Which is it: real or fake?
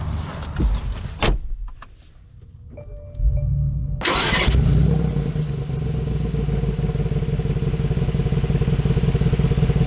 real